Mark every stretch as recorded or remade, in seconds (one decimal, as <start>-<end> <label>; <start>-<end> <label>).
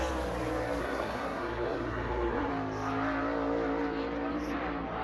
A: 0.0-0.8 recorded; 0.8-2.5 remade; 2.5-5.0 recorded